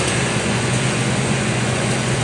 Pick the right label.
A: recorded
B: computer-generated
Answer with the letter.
B